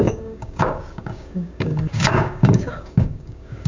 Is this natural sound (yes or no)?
no